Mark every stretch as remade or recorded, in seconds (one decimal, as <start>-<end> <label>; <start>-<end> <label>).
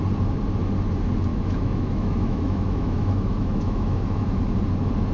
0.0-1.3 recorded; 1.3-4.4 remade; 4.4-5.1 recorded